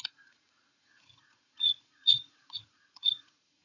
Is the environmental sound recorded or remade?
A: remade